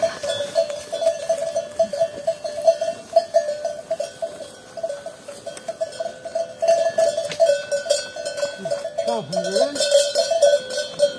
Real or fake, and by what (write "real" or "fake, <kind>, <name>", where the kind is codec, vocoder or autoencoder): real